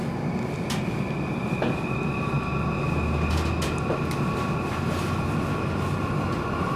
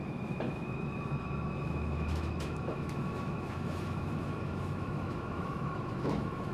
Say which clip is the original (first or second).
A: first